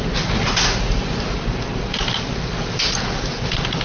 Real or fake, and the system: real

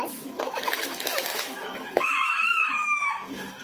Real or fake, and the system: fake, autoencoder, DAC-VAE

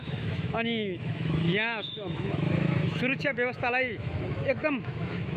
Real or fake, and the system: fake, autoencoder, DAC-VAE